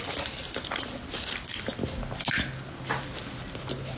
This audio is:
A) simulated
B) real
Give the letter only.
B